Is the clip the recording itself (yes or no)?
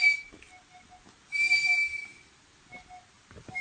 yes